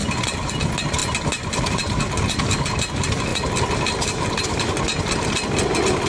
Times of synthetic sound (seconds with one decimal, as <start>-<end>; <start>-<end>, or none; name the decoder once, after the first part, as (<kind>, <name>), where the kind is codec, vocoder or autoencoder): none